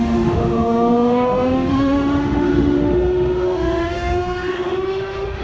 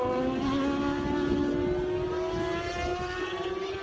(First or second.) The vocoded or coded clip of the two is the first